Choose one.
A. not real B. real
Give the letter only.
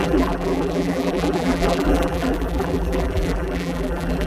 A